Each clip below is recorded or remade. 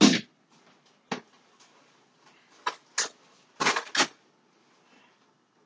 recorded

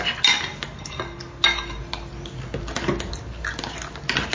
recorded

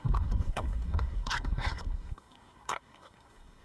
remade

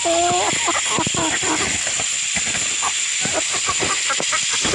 recorded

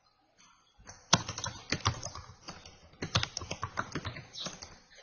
recorded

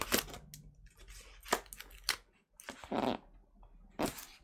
recorded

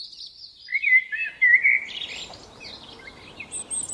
recorded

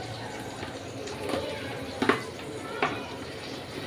recorded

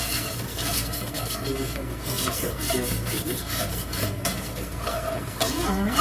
remade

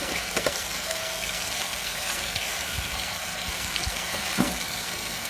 remade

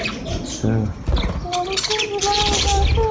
recorded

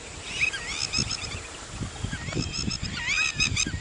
recorded